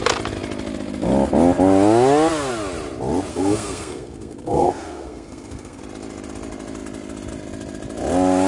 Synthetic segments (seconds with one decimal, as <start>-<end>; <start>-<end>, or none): 3.3-5.8